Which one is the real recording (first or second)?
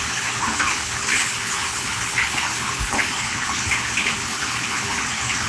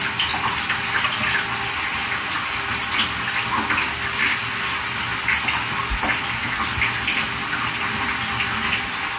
second